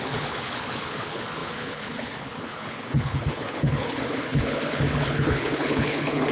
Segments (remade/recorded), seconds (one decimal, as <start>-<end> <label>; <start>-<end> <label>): 0.0-6.3 remade